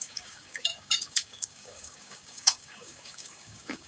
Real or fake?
fake